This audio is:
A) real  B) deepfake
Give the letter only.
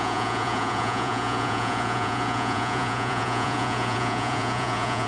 B